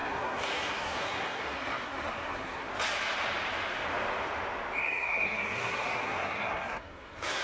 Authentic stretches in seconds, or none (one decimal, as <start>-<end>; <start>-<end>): 2.7-4.8